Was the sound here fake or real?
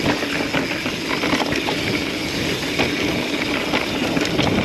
real